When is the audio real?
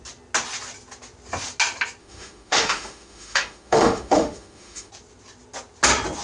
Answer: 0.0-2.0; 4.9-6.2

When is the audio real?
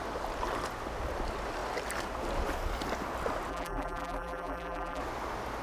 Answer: 0.0-3.5; 5.0-5.6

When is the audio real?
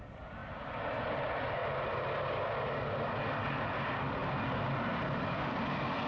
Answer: 0.0-6.1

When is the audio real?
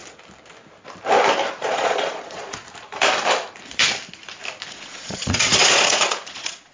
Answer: 0.0-1.5; 2.6-4.7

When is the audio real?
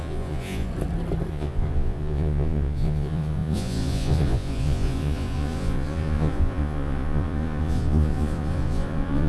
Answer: 0.7-1.3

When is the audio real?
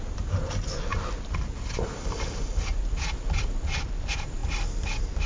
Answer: 0.0-5.3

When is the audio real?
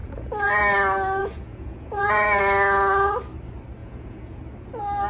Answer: 0.6-1.2; 2.4-3.8; 4.4-5.1